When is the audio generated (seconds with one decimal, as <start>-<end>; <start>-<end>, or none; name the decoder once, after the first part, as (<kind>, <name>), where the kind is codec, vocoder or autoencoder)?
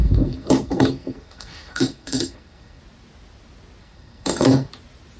0.0-2.8 (codec, SNAC); 3.8-4.7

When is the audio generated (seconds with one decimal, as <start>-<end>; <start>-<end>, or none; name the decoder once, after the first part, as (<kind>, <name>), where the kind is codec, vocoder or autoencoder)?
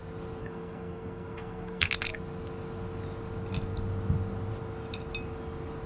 0.4-1.9 (codec, SNAC)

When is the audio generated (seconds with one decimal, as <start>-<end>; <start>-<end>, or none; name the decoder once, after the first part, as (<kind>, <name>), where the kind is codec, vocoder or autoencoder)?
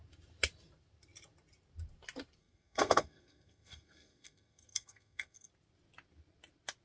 2.4-5.5 (codec, SNAC)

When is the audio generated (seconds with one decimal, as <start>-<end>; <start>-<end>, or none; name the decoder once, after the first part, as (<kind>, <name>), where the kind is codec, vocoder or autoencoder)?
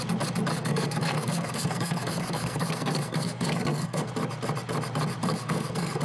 0.5-4.1 (codec, SNAC); 5.2-6.0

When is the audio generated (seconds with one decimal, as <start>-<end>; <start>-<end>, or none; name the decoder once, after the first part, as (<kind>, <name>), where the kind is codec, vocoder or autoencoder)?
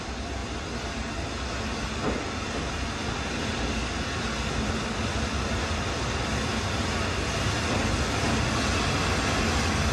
none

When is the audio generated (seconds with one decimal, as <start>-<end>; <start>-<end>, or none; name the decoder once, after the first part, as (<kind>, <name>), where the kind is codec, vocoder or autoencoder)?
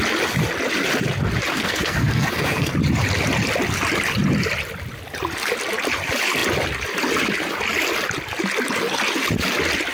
1.5-2.7 (codec, SNAC)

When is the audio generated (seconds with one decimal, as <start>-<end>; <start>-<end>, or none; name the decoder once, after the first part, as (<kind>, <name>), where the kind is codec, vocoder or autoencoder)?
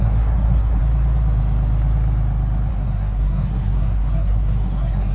0.0-0.8 (codec, SNAC); 2.7-5.1